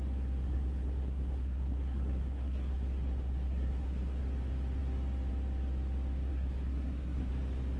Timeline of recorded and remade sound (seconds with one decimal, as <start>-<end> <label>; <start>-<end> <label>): 0.0-0.4 recorded; 0.4-4.2 remade; 4.2-6.3 recorded; 6.3-7.3 remade; 7.3-7.8 recorded